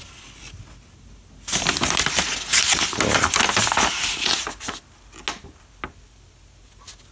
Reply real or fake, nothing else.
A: real